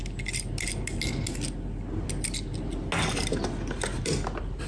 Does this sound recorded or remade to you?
recorded